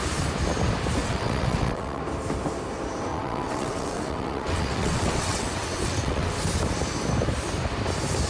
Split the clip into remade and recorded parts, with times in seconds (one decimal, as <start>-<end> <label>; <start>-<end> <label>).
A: 0.0-1.0 recorded; 1.0-2.0 remade; 2.0-3.1 recorded; 3.1-6.3 remade; 6.3-8.3 recorded